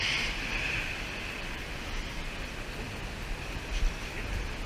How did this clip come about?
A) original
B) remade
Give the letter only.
A